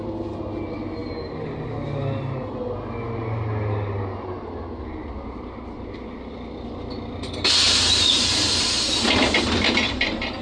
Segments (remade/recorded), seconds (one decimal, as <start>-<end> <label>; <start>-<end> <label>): 0.0-10.4 recorded